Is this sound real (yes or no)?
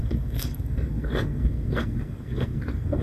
no